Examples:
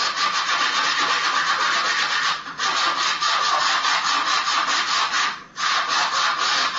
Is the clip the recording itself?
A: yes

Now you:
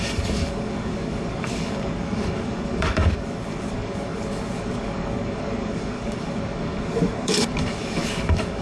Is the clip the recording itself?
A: no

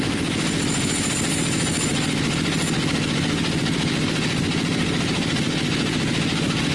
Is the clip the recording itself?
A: yes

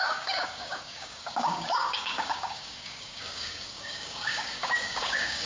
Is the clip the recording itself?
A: no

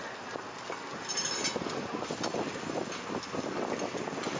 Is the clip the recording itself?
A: yes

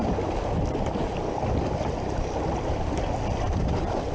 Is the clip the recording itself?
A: yes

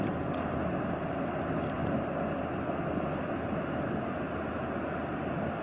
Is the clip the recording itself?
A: yes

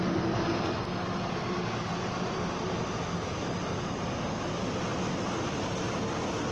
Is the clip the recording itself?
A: yes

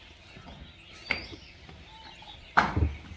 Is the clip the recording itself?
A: yes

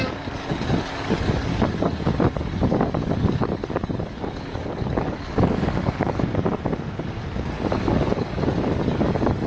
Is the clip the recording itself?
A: no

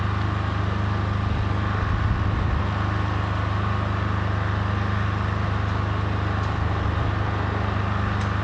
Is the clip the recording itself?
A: yes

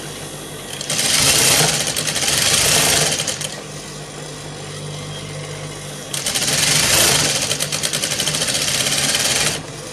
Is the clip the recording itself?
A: yes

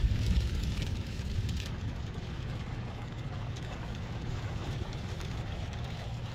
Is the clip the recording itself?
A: no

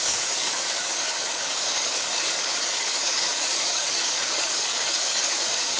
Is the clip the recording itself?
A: no